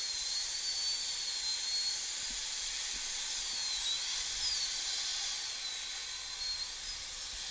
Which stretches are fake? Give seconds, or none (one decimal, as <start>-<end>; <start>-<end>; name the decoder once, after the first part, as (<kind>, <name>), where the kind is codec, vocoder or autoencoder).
0.0-0.5 (vocoder, BigVGAN v2)